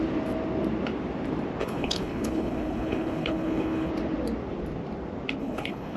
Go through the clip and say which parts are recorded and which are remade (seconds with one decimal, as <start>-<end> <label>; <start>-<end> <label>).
0.0-1.6 recorded; 1.6-3.9 remade; 3.9-5.4 recorded; 5.4-6.0 remade